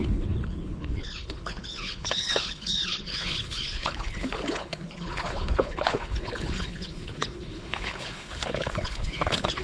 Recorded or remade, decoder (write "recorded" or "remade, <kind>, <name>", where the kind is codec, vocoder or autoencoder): remade, codec, HILCodec